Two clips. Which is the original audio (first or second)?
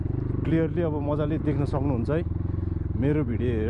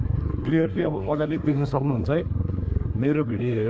first